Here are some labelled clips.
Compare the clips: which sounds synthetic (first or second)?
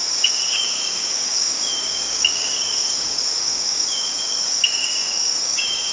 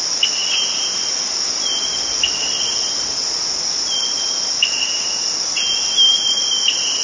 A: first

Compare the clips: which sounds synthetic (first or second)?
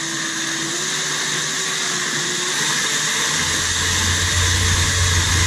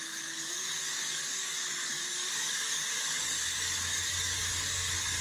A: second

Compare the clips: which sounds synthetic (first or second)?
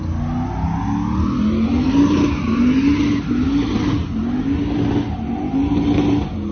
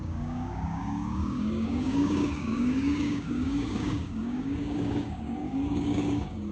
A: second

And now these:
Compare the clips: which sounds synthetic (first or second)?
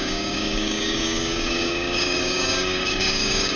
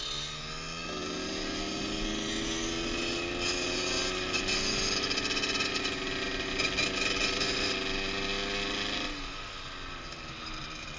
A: first